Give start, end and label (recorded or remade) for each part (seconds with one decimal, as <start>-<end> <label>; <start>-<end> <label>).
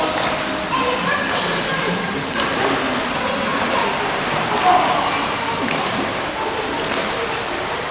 0.0-1.7 recorded; 1.7-2.7 remade; 2.7-3.5 recorded; 3.5-5.7 remade; 5.7-7.9 recorded